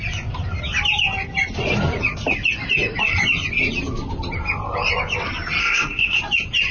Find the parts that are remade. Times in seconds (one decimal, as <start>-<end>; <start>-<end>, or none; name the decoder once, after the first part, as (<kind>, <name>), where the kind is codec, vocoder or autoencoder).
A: 5.6-6.2 (codec, SNAC)